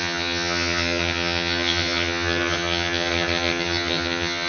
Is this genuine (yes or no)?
no